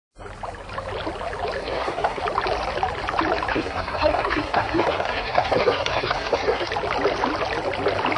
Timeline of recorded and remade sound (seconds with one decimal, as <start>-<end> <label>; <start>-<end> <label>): 0.0-1.6 recorded; 1.6-2.2 remade; 2.2-3.5 recorded; 3.5-6.7 remade; 6.7-8.2 recorded